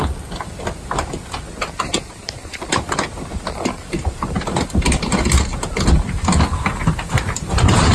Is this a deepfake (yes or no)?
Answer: no